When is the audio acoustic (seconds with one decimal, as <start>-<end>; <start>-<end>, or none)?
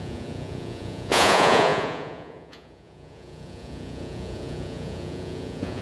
none